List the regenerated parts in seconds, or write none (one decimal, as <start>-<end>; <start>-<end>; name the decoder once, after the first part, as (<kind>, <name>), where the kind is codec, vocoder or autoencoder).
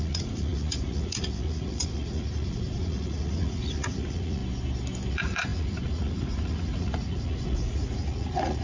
0.0-4.4 (vocoder, Vocos); 5.1-8.6